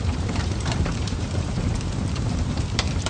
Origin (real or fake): fake